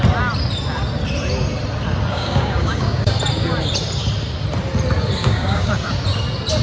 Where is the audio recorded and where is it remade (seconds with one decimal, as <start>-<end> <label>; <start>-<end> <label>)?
0.0-2.1 recorded; 2.1-3.1 remade; 3.1-5.2 recorded; 5.2-5.7 remade; 5.7-6.6 recorded